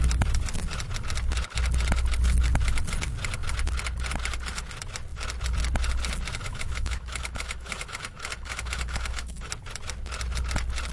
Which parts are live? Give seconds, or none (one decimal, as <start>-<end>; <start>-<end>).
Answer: 0.0-6.4; 9.5-10.9